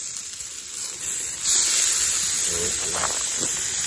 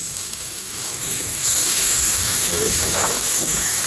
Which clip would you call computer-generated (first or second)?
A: second